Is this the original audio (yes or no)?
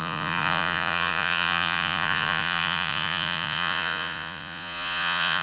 no